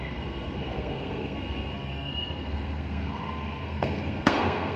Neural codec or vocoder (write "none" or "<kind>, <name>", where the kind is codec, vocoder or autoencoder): codec, SNAC